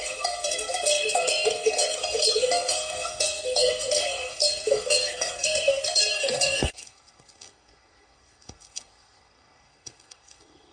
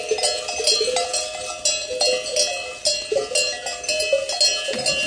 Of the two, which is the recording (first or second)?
second